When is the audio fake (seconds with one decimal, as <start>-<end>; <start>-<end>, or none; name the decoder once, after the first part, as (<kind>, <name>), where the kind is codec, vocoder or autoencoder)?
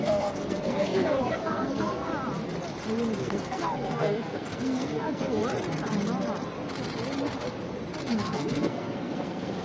0.0-2.1 (codec, SNAC); 3.2-5.4; 8.1-9.6